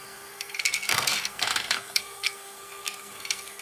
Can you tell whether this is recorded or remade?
remade